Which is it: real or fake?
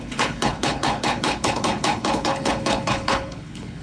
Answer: fake